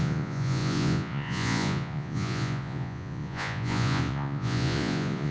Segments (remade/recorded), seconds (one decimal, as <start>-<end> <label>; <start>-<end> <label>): 0.0-5.3 remade